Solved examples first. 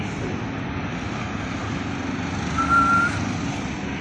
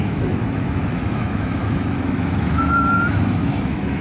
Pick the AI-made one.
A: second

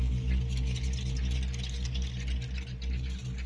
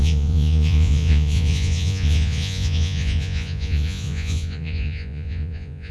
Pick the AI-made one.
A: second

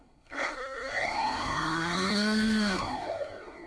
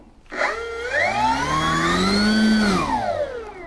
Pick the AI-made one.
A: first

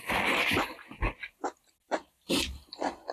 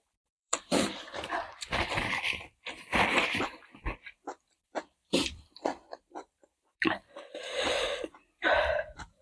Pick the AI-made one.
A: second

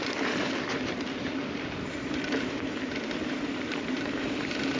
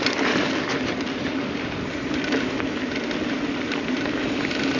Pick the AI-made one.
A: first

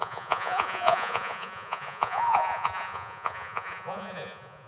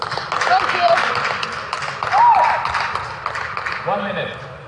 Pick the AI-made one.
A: first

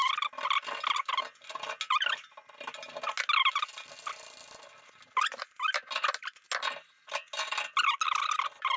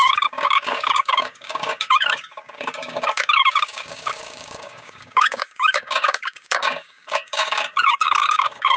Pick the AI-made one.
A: second